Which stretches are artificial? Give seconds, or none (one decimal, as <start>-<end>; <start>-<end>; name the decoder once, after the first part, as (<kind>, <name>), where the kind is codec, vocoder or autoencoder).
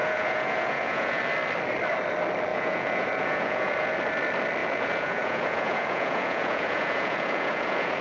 0.0-1.2 (vocoder, Vocos); 2.5-3.9; 4.6-8.0